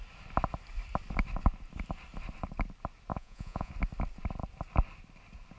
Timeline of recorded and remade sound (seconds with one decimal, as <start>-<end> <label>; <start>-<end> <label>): 0.0-3.1 recorded; 3.1-3.7 remade; 3.7-5.6 recorded